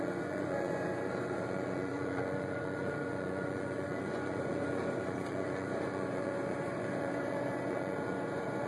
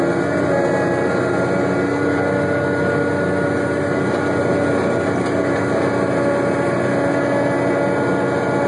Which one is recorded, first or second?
second